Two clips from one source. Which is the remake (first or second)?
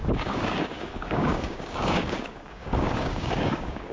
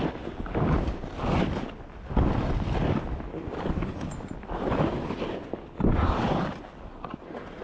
first